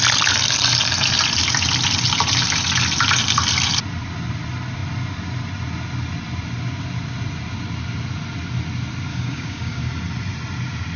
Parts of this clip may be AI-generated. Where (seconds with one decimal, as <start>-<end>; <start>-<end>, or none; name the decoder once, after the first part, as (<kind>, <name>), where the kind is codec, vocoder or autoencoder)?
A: 9.1-9.8 (codec, DAC)